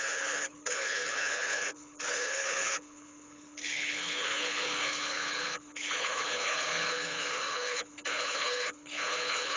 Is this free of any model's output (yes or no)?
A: no